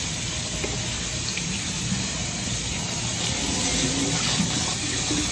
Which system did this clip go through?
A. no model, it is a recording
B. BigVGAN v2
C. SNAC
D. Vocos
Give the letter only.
A